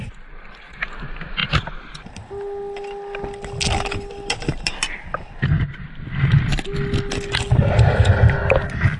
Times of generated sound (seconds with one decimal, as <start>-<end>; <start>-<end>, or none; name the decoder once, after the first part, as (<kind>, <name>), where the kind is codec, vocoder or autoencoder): none